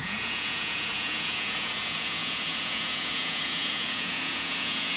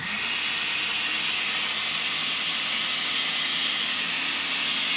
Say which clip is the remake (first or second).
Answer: first